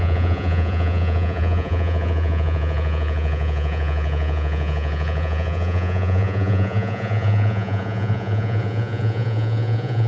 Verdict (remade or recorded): remade